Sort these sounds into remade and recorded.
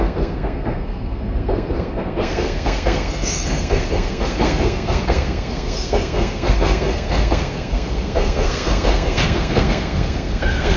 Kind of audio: remade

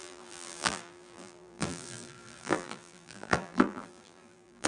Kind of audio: remade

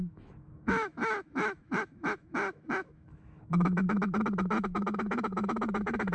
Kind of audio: remade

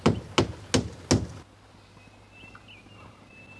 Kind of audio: recorded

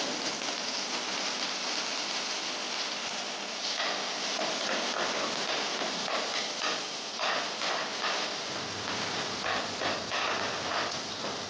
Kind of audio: recorded